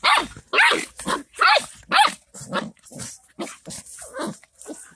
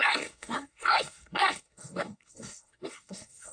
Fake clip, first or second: second